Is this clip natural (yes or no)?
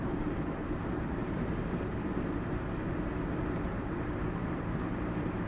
no